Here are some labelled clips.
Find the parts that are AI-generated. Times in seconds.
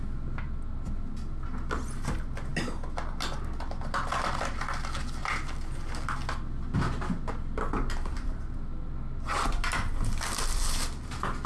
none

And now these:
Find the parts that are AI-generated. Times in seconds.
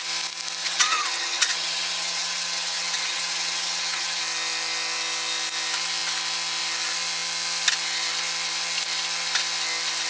0.6-4.2 (vocoder, HiFi-GAN)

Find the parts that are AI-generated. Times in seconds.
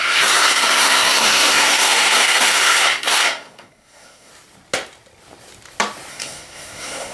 0.0-4.3 (codec, SNAC); 6.1-7.1